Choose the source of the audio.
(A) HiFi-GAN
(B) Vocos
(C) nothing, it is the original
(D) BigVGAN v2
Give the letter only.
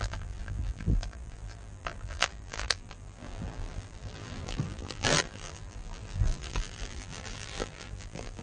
D